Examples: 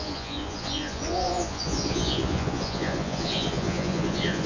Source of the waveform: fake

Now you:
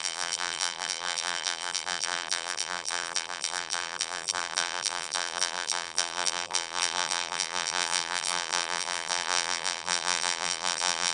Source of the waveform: fake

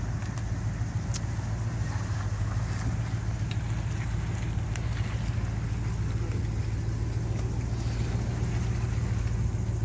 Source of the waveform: real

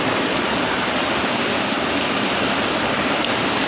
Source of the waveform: real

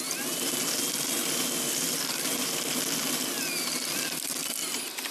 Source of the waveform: real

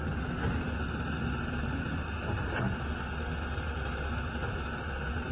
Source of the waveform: real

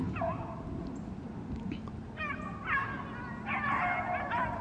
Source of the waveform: real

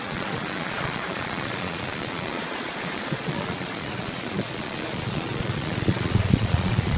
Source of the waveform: fake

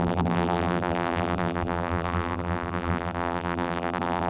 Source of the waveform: fake